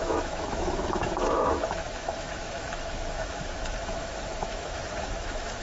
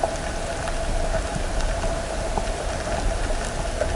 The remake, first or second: first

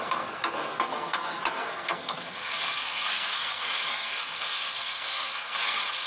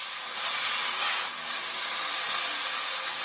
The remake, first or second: first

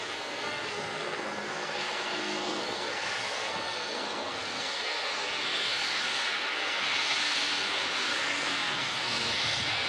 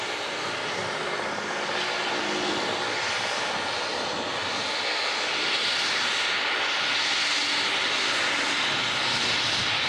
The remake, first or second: first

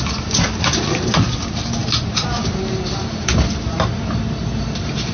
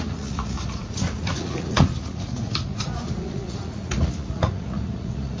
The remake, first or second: second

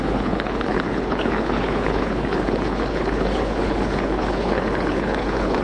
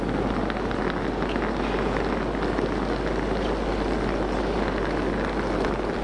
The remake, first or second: first